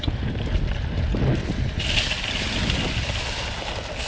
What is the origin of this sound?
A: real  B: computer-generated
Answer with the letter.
A